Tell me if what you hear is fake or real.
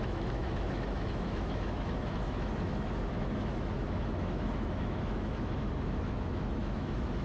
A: fake